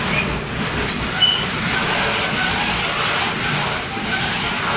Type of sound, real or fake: real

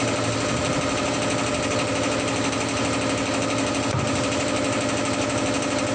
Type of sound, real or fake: real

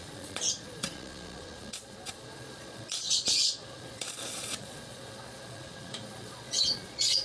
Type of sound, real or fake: fake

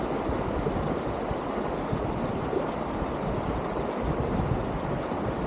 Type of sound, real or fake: real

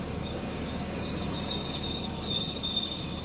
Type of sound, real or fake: fake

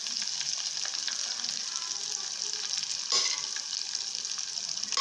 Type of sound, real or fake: real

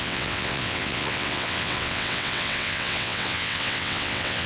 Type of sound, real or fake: fake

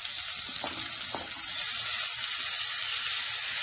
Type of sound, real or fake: real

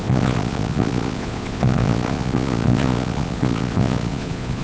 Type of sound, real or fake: fake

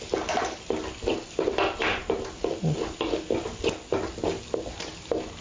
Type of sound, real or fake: real